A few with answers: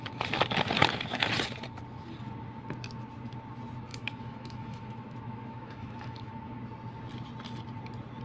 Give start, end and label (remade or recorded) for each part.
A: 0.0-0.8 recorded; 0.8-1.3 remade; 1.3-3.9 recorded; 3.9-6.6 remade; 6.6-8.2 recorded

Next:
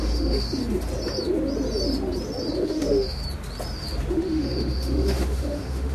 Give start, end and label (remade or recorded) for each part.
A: 0.0-0.6 remade; 0.6-2.6 recorded; 2.6-3.2 remade; 3.2-4.1 recorded; 4.1-5.9 remade

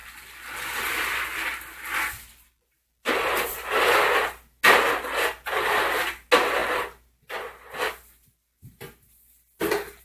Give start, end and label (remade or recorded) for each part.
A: 0.0-10.0 recorded

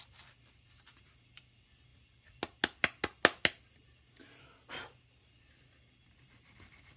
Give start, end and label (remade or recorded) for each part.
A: 0.0-7.0 recorded

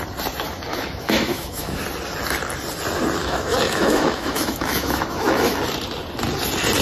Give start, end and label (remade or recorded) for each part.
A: 0.0-0.7 recorded; 0.7-1.8 remade; 1.8-3.2 recorded; 3.2-5.6 remade; 5.6-6.8 recorded

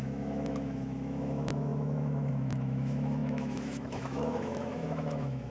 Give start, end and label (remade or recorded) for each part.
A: 0.0-5.5 remade